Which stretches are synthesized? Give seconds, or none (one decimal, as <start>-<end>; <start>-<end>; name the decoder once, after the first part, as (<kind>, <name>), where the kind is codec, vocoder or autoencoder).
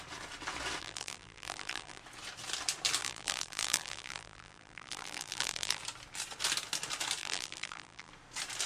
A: 0.8-2.0 (vocoder, BigVGAN v2); 3.0-5.8; 7.2-8.1